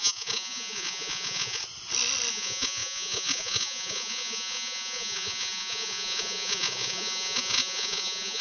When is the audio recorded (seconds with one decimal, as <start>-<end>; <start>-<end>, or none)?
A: 1.6-2.3